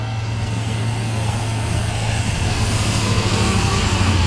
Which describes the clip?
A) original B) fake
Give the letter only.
B